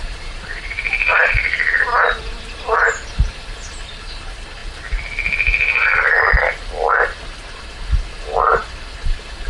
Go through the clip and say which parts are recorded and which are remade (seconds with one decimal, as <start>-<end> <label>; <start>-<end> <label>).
0.0-4.6 remade; 4.6-6.9 recorded; 6.9-9.5 remade